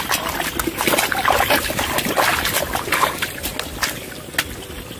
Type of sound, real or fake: real